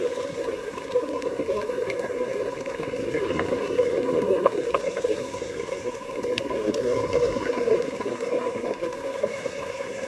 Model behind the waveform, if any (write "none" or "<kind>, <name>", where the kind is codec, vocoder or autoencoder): codec, SNAC